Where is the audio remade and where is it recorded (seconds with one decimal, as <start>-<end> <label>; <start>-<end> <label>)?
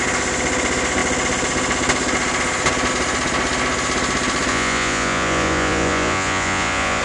0.0-4.5 recorded; 4.5-7.0 remade